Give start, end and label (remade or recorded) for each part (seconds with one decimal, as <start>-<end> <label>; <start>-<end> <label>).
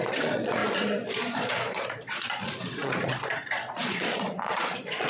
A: 0.0-5.1 remade